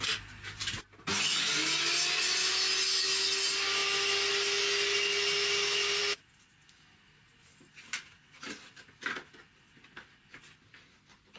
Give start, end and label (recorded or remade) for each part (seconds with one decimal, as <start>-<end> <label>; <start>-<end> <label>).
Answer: 0.0-11.4 recorded